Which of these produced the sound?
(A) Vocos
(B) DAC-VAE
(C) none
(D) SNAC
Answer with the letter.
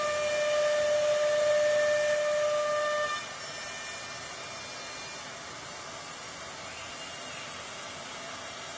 C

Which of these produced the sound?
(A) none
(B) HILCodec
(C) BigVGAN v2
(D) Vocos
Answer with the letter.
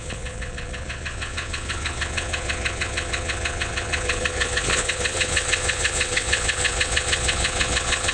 D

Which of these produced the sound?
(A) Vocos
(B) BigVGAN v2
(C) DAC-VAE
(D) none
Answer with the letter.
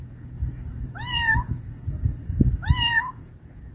A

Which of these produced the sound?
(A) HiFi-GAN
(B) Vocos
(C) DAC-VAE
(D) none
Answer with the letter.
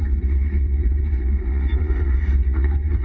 B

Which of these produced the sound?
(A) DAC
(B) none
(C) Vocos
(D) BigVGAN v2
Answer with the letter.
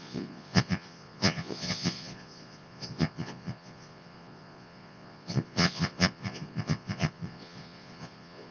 C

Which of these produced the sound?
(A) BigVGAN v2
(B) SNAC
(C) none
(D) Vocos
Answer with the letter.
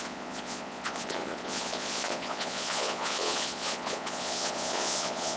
D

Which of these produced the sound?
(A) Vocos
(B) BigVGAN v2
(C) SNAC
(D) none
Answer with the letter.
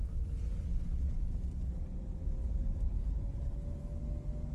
D